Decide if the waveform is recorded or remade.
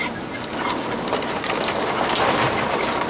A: recorded